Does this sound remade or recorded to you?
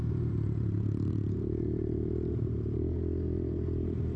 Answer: remade